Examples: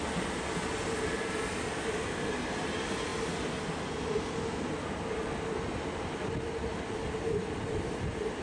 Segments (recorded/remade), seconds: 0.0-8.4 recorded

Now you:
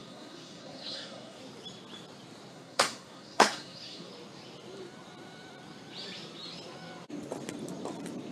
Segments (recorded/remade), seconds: 0.0-1.4 remade; 1.4-2.5 recorded; 2.5-4.1 remade; 4.1-8.3 recorded

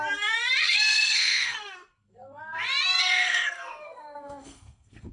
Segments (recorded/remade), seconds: 0.0-0.6 recorded; 0.6-2.4 remade; 2.4-3.0 recorded; 3.0-5.1 remade

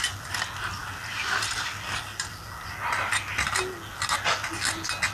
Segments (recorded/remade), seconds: 0.0-5.1 recorded

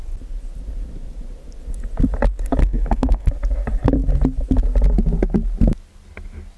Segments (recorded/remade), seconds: 0.0-2.6 recorded; 2.6-3.3 remade; 3.3-6.6 recorded